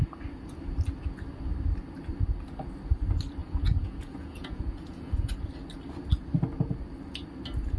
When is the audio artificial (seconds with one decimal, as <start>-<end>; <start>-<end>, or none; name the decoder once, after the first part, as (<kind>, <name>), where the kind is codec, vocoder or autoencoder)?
3.4-5.3 (vocoder, Vocos)